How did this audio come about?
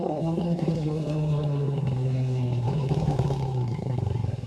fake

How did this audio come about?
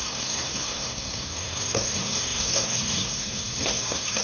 fake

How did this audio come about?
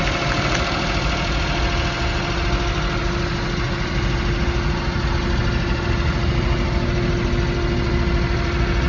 real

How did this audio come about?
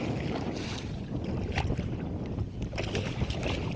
real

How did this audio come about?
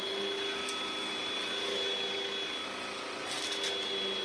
real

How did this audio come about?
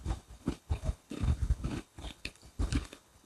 fake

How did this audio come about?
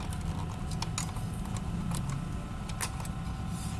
real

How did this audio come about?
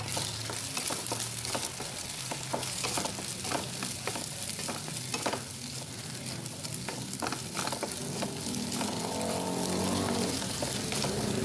real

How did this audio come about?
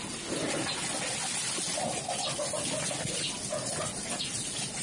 real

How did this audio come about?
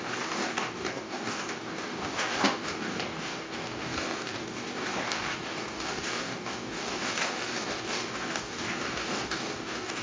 fake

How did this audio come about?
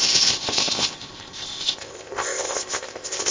fake